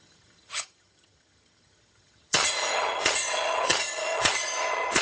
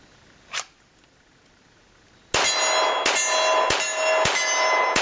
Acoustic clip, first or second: second